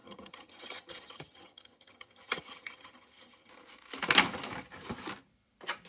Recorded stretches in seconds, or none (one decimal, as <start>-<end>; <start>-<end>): 3.5-5.9